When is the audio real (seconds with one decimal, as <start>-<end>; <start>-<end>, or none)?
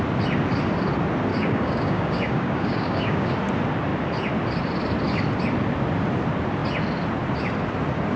0.0-1.3; 3.3-8.2